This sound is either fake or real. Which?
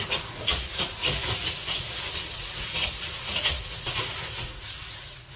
fake